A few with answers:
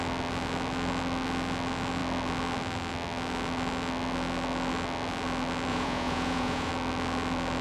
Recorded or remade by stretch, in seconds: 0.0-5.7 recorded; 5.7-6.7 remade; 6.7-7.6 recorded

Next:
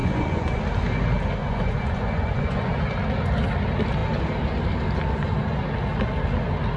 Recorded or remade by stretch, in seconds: 0.0-0.6 remade; 0.6-1.4 recorded; 1.4-2.8 remade; 2.8-6.8 recorded